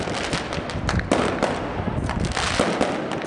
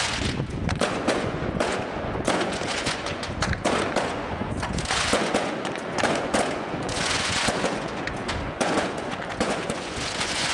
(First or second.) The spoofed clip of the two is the second